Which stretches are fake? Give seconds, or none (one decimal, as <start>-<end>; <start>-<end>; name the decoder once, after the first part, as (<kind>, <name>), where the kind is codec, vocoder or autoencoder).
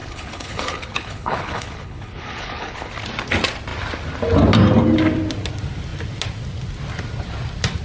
0.0-2.9 (codec, HILCodec)